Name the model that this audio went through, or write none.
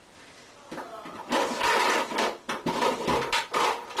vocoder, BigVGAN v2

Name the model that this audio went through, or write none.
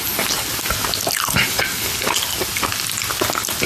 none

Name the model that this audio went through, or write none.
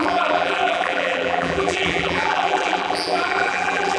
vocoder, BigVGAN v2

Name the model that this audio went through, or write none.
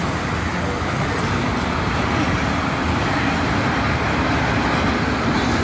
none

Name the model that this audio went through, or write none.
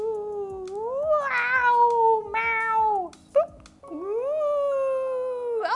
none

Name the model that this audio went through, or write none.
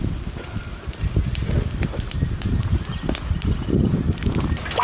none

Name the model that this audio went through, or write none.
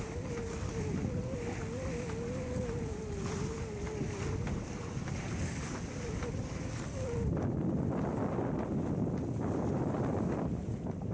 none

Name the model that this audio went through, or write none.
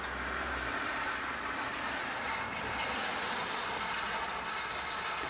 none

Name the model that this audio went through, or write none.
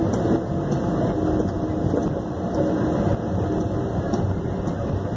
none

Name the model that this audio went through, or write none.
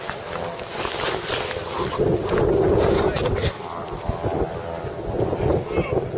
none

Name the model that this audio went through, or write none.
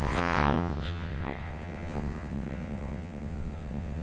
vocoder, WaveNeXt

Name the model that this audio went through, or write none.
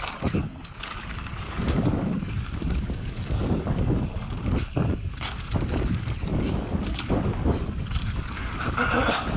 codec, DAC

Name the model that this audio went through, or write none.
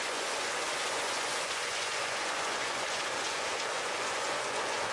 vocoder, Vocos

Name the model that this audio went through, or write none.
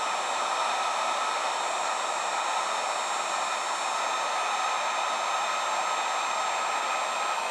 none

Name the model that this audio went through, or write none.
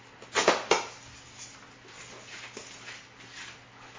none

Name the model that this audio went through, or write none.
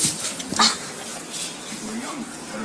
none